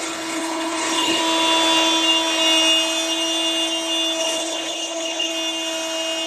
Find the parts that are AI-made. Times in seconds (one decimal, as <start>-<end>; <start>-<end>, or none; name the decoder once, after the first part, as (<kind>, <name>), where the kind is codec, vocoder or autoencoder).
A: 0.0-1.2 (codec, HILCodec); 4.2-5.3